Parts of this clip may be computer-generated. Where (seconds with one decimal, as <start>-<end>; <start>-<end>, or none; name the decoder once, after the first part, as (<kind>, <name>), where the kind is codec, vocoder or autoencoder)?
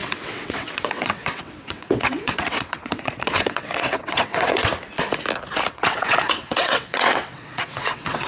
0.0-4.7 (vocoder, WaveNeXt); 5.7-8.3